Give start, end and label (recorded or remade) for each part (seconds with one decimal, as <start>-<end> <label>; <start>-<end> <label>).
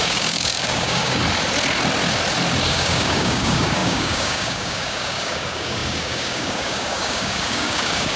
0.0-1.2 remade; 1.2-2.7 recorded; 2.7-8.2 remade